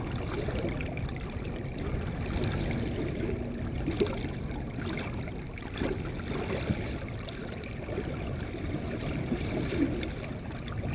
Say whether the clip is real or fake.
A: real